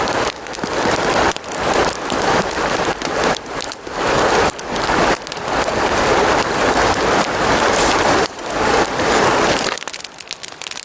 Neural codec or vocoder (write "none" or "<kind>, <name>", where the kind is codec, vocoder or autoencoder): none